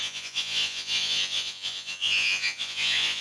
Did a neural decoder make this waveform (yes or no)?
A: yes